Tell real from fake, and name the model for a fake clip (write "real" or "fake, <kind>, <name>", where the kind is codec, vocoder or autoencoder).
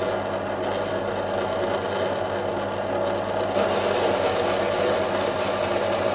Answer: real